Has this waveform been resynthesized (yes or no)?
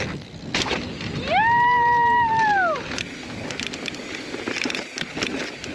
no